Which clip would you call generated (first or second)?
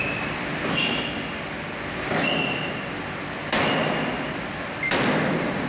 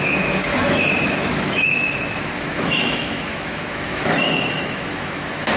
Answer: second